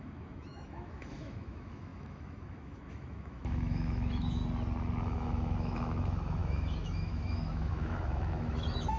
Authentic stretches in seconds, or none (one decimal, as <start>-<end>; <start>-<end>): 4.4-5.0

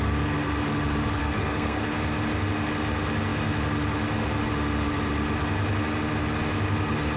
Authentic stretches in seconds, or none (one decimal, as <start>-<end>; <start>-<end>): 0.0-1.2; 1.8-7.2

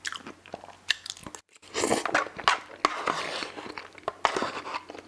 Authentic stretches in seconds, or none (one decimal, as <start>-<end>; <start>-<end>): 0.0-5.1

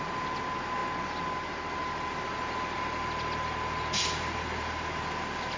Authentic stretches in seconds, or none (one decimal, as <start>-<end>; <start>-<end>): 0.0-5.6

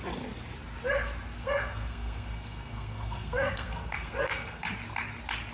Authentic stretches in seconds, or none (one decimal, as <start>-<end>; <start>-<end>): 0.0-1.4; 4.7-5.5

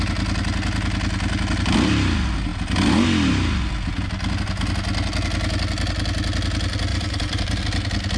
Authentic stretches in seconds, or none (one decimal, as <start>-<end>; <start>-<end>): 0.0-6.9; 7.6-8.2

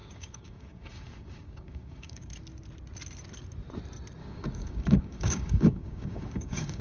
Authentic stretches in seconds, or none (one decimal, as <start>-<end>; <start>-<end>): 2.3-4.2

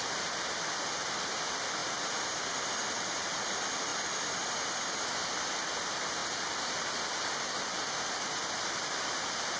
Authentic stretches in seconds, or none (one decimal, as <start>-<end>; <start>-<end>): 0.0-9.6